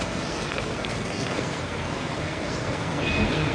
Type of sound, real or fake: fake